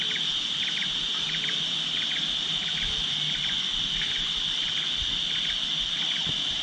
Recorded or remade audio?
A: recorded